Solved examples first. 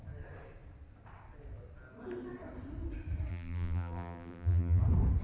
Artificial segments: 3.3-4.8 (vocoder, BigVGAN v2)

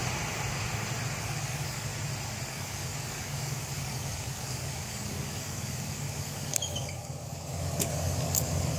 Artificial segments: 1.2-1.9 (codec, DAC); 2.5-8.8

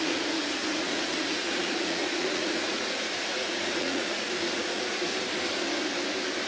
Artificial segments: 0.0-5.1 (vocoder, Vocos)

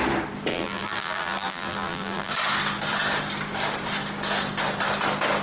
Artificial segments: 0.5-2.3 (vocoder, BigVGAN v2)

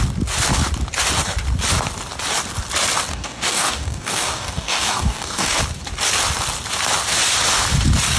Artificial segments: 3.1-5.6 (codec, DAC)

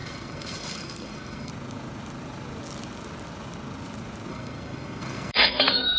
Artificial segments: 0.0-1.5 (codec, SNAC); 4.3-6.0

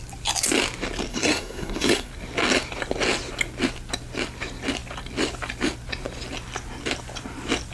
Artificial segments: 1.1-2.1 (codec, SNAC)